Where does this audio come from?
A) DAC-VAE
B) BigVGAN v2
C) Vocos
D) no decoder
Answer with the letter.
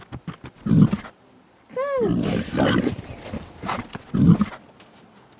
D